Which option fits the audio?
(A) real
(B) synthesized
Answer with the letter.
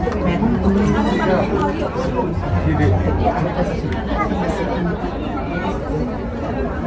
A